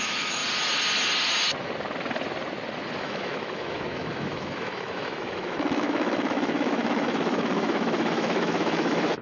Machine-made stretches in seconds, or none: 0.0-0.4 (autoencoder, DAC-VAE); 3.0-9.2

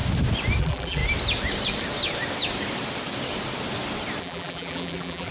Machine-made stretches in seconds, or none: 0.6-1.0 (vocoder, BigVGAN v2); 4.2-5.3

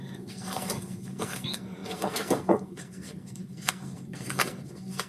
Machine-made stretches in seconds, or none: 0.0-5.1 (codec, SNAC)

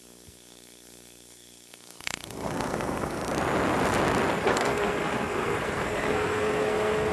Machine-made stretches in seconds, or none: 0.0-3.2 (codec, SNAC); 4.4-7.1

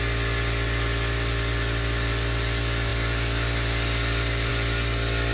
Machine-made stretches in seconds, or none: none